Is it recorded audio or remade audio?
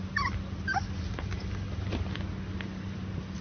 recorded